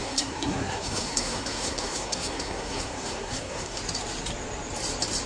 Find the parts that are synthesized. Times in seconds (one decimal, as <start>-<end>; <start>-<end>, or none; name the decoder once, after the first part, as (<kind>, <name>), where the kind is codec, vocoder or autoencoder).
0.0-3.8 (codec, SNAC)